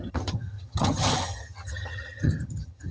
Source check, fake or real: fake